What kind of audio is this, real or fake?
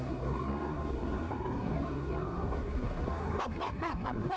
fake